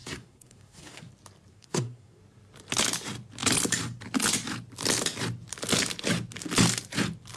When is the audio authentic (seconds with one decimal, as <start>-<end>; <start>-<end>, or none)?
1.1-1.5; 2.2-7.4